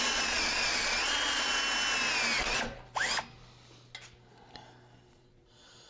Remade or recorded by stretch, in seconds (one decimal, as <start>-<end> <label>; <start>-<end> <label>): 0.0-1.6 remade; 1.6-5.1 recorded; 5.1-5.9 remade